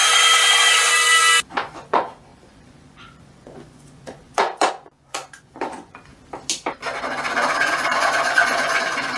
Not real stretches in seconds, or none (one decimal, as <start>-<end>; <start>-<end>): 1.5-6.1; 7.0-9.2